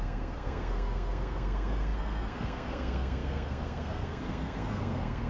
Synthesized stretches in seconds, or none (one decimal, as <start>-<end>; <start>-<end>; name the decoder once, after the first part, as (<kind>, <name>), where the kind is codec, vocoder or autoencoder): 0.0-5.3 (codec, SNAC)